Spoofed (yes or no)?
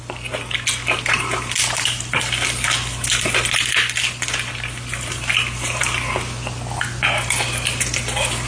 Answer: no